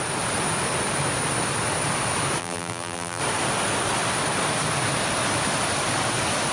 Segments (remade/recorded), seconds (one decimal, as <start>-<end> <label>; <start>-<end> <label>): 0.0-2.4 recorded; 2.4-3.2 remade; 3.2-6.5 recorded